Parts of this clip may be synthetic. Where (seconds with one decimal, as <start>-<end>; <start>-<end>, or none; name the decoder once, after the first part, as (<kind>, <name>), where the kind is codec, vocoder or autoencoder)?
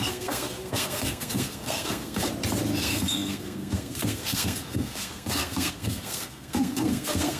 0.0-2.3 (codec, SNAC); 2.8-7.4